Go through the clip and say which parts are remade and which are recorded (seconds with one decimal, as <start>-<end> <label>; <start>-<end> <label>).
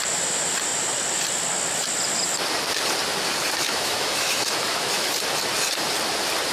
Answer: 0.0-3.7 recorded; 3.7-5.1 remade; 5.1-6.5 recorded